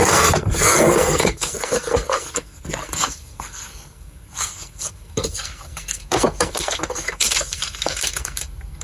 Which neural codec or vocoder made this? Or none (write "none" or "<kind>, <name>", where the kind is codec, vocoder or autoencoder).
codec, SNAC